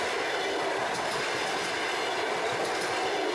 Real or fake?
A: real